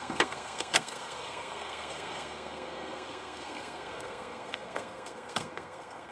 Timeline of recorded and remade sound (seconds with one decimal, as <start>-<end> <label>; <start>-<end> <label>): 0.0-6.1 remade